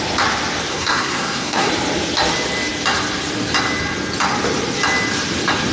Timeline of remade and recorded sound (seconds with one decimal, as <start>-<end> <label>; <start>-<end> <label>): 0.0-0.7 recorded; 0.7-1.7 remade; 1.7-5.7 recorded